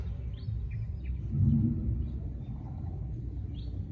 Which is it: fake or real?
real